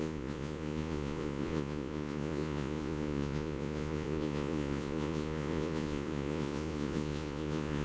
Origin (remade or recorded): remade